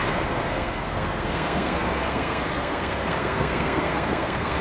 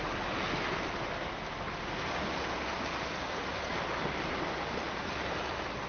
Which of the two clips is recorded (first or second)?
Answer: second